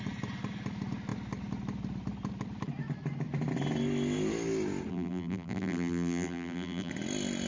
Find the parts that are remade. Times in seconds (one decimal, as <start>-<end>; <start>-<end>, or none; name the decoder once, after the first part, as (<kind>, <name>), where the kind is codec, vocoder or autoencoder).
4.9-6.9 (vocoder, BigVGAN v2)